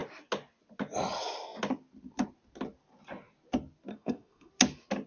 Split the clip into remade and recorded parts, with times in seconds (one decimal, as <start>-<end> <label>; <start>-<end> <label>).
0.0-3.9 recorded; 3.9-4.5 remade; 4.5-5.1 recorded